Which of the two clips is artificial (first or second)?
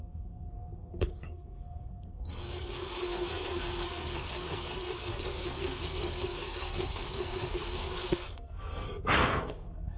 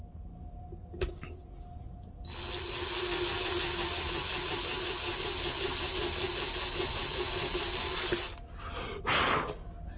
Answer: first